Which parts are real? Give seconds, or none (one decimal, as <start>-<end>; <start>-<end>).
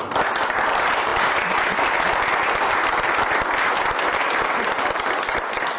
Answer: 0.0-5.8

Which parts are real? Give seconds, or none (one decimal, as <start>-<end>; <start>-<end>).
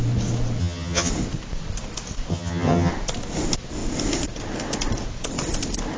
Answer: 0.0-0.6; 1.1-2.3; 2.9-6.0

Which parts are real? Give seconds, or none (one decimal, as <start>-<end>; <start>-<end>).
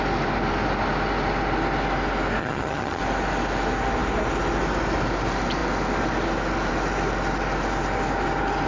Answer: 0.0-2.4; 3.0-8.7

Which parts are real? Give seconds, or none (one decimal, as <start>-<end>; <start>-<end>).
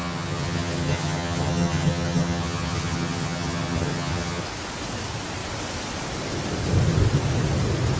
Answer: 4.4-8.0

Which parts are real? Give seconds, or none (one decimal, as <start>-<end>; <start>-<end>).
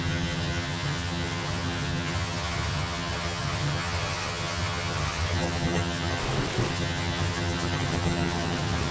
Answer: 6.2-6.7